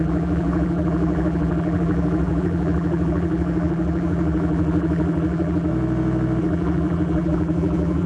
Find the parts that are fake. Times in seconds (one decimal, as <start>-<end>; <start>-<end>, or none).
0.0-5.7; 6.4-8.1